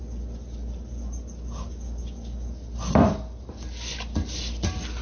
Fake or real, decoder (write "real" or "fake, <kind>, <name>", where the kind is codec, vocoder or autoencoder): real